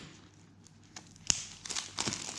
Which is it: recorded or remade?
recorded